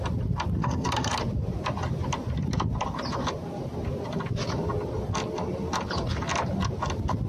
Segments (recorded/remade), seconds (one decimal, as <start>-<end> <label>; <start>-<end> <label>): 0.0-0.6 recorded; 0.6-1.1 remade; 1.1-7.3 recorded